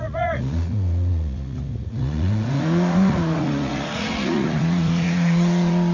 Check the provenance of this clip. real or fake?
fake